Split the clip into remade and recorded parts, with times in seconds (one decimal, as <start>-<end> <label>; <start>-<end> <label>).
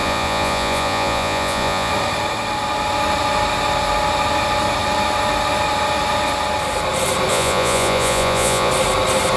0.0-1.9 remade; 1.9-7.3 recorded; 7.3-8.7 remade; 8.7-9.4 recorded